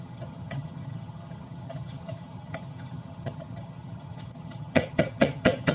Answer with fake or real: fake